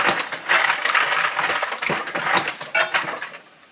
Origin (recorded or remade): recorded